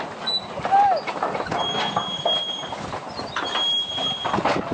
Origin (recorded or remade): recorded